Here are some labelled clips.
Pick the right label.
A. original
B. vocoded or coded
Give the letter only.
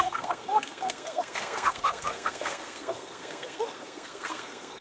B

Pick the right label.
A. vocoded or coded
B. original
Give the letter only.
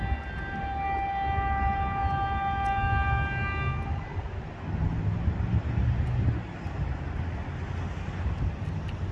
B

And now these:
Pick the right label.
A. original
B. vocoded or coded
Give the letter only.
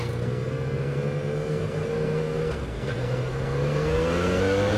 B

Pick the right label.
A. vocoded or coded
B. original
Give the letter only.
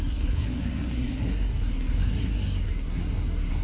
A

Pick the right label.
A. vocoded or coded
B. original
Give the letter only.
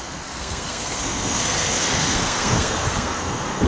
A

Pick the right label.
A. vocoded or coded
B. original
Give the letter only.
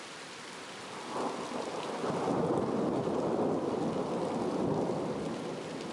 B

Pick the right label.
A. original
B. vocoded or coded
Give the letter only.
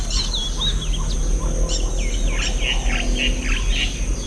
A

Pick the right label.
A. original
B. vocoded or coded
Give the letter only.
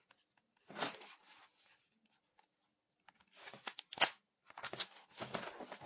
A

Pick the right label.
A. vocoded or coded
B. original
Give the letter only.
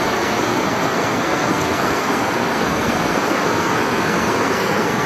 A